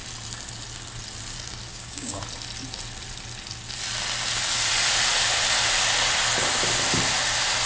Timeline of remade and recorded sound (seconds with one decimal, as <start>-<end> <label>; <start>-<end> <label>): 0.0-1.7 recorded; 1.7-2.2 remade; 2.2-7.7 recorded